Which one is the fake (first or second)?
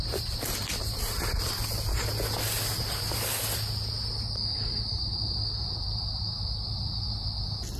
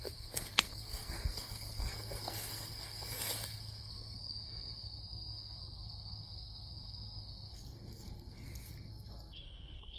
second